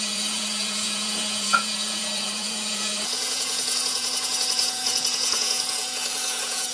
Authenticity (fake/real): fake